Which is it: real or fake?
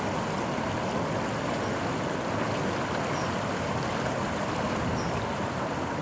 real